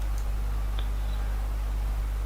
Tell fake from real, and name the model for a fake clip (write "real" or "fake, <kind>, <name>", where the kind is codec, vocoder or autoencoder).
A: real